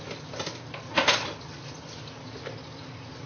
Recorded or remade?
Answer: recorded